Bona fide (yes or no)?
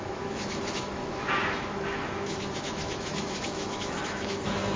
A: no